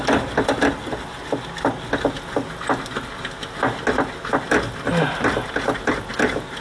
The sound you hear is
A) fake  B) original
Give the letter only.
B